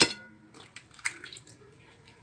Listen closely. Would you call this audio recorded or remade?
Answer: remade